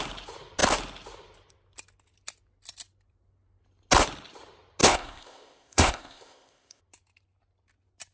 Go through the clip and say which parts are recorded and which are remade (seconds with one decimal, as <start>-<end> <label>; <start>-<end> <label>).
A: 0.0-4.8 recorded; 4.8-6.8 remade; 6.8-8.1 recorded